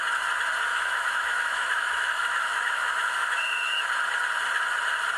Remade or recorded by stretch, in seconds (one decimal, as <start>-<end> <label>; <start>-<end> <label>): 0.0-0.7 recorded; 0.7-3.8 remade; 3.8-5.2 recorded